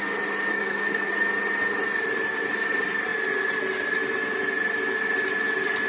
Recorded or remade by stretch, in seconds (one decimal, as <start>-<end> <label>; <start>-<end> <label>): 0.0-0.5 recorded; 0.5-1.1 remade; 1.1-5.9 recorded